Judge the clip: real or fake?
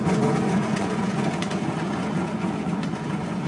fake